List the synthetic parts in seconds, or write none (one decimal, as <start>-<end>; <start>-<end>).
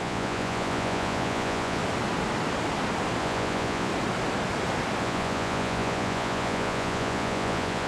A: 0.0-1.8; 3.2-3.9; 5.0-7.9